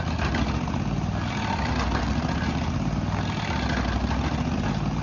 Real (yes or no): yes